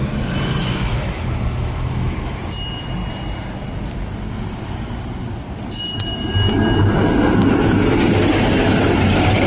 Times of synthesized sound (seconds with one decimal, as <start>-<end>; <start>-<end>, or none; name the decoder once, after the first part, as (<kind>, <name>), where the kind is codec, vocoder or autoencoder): 0.6-2.4 (autoencoder, DAC-VAE)